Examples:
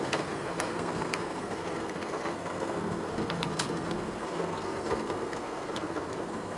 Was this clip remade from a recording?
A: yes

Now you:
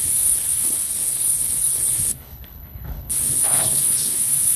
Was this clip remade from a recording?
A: yes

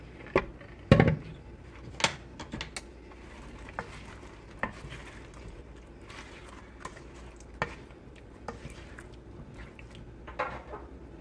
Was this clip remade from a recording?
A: no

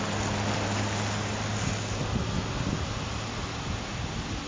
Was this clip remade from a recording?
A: no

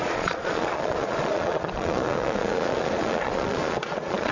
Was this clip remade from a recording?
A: yes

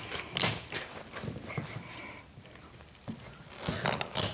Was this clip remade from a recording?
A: no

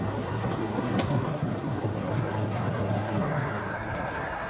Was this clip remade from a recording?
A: yes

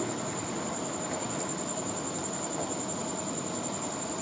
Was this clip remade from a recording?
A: yes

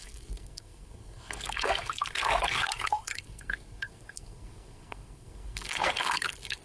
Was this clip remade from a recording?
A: yes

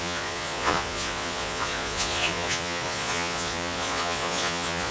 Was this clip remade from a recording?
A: yes